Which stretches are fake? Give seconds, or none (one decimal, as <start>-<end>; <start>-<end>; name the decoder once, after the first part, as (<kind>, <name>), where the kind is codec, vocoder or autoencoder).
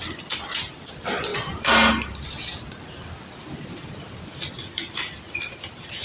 1.3-1.9 (vocoder, BigVGAN v2)